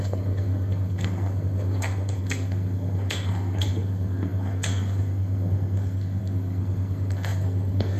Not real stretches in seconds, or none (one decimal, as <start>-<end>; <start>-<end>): 0.0-8.0